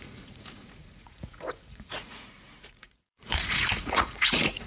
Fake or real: fake